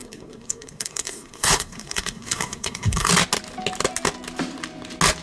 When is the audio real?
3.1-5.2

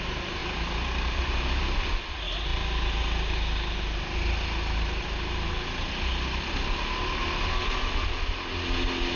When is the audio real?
0.0-0.4; 1.6-9.2

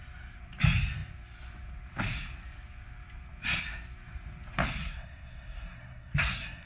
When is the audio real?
0.0-4.8

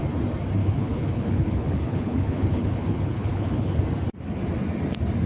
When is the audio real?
0.0-0.6; 3.8-5.3

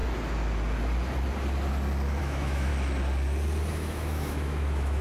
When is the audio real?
0.0-2.2; 2.7-3.7